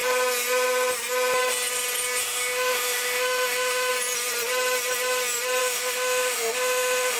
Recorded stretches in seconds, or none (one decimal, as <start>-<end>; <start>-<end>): 0.0-2.2; 3.9-5.6